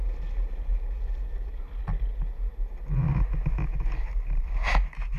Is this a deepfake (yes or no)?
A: no